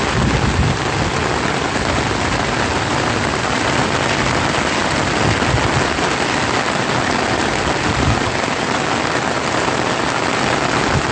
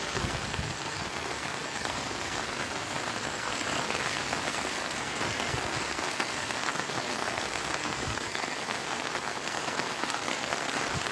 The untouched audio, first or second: first